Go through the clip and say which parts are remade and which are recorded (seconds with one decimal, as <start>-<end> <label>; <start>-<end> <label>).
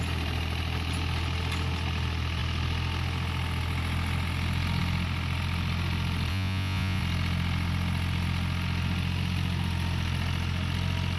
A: 0.0-6.3 recorded; 6.3-7.0 remade; 7.0-11.2 recorded